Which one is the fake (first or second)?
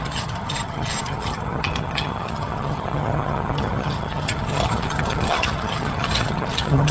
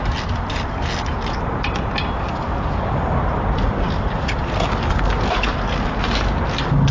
first